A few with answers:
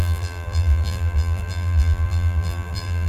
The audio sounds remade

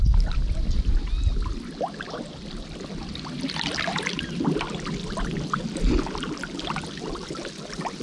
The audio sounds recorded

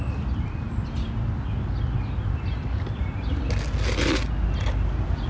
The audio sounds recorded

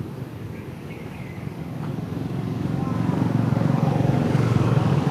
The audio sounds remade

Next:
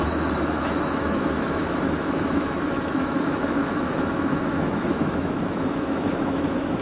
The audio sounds remade